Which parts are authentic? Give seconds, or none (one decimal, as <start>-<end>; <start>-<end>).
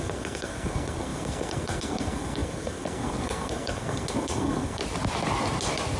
4.8-6.0